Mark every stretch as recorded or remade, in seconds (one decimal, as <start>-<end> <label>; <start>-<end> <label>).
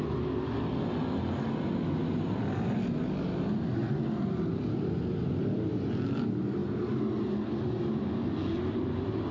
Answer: 0.0-9.3 recorded